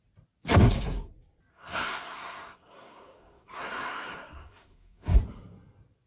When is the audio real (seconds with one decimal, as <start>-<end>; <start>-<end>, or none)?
0.0-0.5; 1.1-1.5; 5.2-6.1